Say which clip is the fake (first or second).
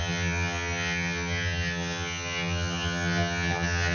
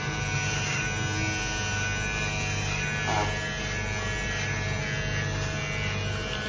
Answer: first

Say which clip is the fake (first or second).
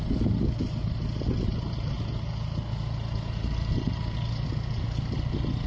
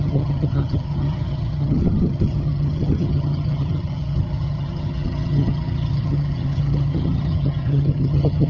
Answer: second